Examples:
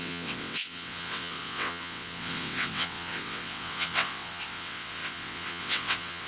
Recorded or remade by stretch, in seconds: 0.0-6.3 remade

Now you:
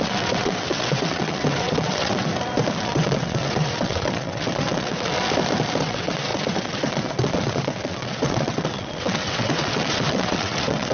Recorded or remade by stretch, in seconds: 0.0-2.3 remade; 2.3-2.8 recorded; 2.8-5.1 remade; 5.1-5.8 recorded; 5.8-10.9 remade